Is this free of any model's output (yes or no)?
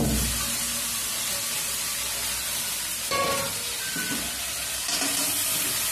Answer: yes